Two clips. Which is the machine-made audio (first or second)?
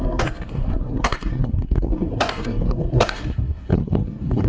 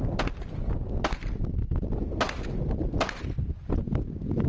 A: first